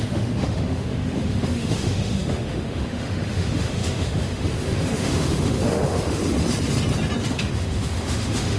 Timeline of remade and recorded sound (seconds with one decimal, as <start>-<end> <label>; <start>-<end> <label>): 0.0-6.2 remade; 6.2-7.3 recorded; 7.3-8.6 remade